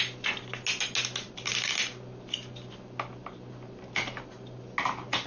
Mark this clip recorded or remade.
recorded